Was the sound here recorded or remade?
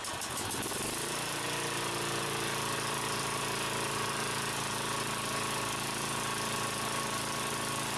recorded